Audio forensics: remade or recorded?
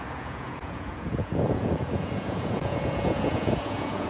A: remade